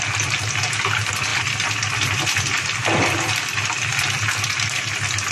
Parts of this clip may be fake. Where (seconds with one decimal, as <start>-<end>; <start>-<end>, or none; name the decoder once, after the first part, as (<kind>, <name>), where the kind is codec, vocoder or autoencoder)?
none